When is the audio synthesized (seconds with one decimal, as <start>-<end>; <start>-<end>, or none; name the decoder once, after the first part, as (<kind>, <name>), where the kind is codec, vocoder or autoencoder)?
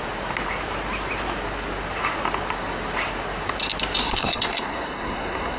4.0-5.6 (codec, SNAC)